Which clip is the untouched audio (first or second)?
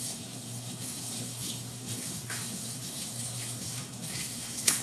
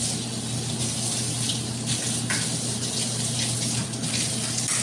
second